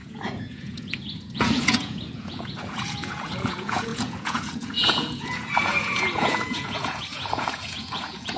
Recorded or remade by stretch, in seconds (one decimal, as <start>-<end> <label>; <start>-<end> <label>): 0.0-8.4 remade